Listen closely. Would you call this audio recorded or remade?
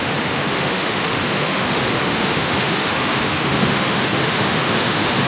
remade